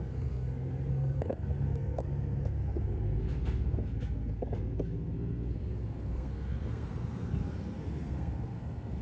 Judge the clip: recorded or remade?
remade